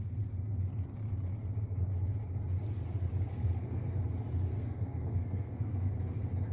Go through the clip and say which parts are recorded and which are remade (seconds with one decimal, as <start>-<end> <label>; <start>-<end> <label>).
0.0-3.3 recorded; 3.3-4.0 remade; 4.0-4.5 recorded; 4.5-5.9 remade; 5.9-6.5 recorded